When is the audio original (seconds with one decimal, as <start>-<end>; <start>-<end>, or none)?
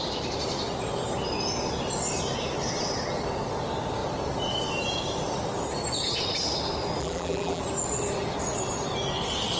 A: 0.0-7.0; 7.6-9.6